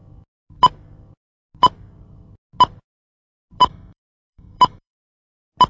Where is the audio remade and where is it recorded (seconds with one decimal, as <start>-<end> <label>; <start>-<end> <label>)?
0.0-3.6 recorded; 3.6-5.1 remade; 5.1-5.7 recorded